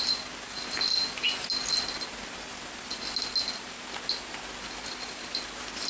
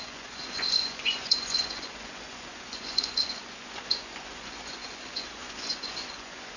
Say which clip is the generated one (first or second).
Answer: second